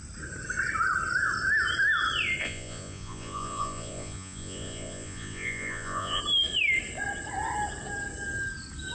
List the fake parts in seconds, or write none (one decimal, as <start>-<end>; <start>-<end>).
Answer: 2.4-6.2